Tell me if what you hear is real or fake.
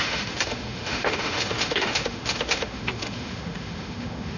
fake